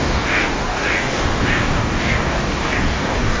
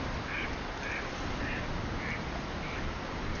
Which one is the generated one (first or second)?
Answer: first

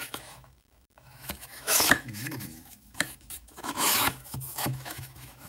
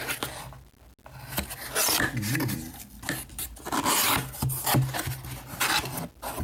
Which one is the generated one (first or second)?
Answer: first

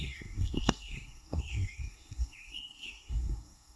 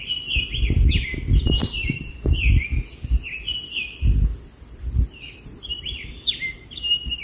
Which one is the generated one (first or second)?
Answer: first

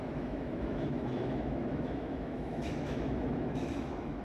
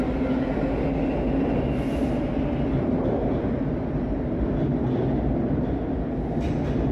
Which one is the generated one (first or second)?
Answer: first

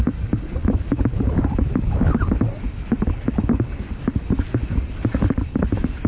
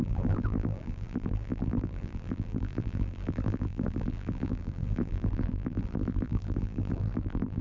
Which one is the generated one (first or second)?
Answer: second